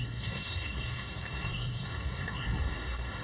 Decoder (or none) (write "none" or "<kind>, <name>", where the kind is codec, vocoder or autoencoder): codec, SNAC